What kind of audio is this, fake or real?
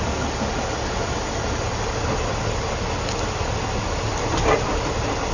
real